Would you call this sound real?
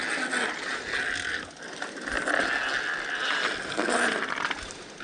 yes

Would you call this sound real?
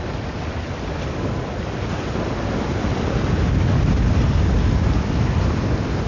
yes